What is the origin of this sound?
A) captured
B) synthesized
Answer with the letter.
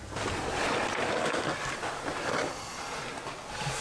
A